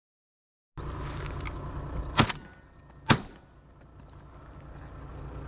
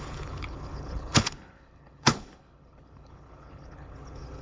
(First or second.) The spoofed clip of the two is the second